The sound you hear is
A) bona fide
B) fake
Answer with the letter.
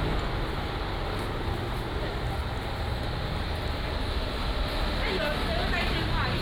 A